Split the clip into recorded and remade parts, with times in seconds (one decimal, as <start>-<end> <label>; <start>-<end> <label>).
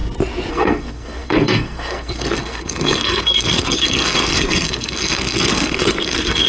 0.0-0.5 recorded; 0.5-6.5 remade